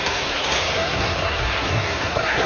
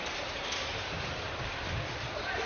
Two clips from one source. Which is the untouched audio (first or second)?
second